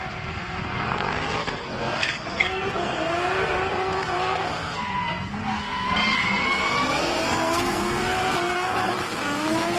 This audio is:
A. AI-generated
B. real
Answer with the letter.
A